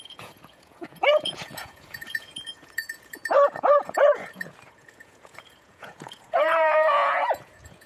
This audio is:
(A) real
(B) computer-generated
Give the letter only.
B